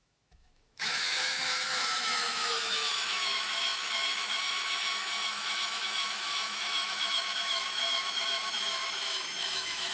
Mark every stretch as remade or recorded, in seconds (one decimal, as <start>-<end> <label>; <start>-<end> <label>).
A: 0.0-9.9 remade

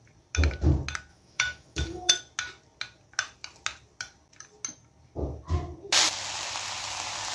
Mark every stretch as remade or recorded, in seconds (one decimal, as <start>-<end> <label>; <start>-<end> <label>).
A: 0.0-1.1 recorded; 1.1-2.1 remade; 2.1-7.3 recorded

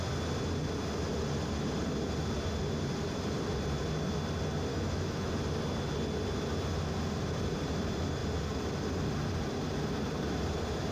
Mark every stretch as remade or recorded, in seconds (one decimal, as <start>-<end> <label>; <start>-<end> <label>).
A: 0.0-4.7 recorded; 4.7-5.3 remade; 5.3-10.9 recorded